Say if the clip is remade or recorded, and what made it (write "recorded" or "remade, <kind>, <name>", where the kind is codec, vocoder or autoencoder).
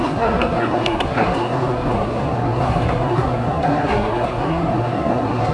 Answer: remade, codec, SNAC